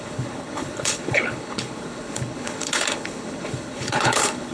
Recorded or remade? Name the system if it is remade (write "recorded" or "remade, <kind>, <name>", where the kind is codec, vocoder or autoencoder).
remade, codec, HILCodec